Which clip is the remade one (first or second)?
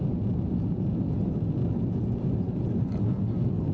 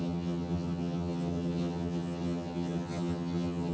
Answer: second